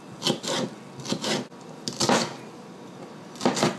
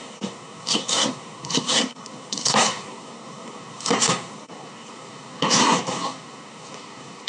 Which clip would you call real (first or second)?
first